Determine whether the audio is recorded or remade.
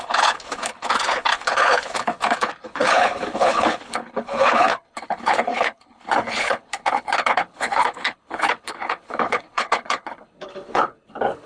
remade